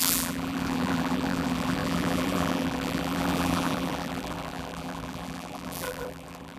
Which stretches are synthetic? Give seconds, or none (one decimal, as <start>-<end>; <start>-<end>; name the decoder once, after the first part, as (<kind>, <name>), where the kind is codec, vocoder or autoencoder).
0.0-6.6 (vocoder, BigVGAN v2)

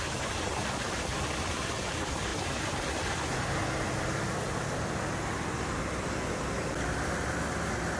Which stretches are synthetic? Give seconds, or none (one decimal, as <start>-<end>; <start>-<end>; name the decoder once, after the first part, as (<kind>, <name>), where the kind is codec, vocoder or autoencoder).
2.3-7.1 (vocoder, BigVGAN v2)